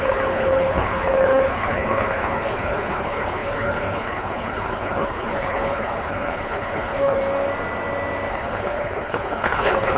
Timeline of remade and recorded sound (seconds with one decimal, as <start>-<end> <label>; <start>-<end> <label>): 0.0-7.2 remade; 7.2-8.3 recorded; 8.3-10.0 remade